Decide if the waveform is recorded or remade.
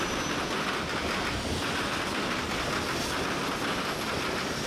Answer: recorded